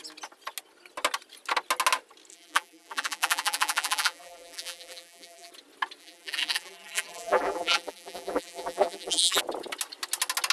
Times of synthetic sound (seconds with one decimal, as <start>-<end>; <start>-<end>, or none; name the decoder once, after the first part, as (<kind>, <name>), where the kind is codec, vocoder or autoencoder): 2.3-5.5 (vocoder, BigVGAN v2); 6.0-9.4